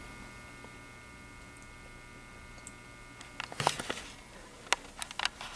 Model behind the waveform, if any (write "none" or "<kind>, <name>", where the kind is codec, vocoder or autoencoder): none